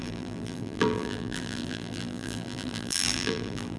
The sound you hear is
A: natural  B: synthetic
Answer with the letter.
B